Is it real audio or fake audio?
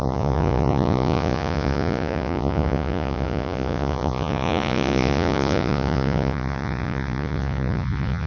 fake